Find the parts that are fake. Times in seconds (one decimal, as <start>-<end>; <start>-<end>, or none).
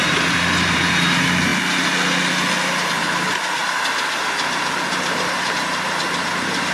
0.0-1.5; 2.9-3.6; 4.9-6.7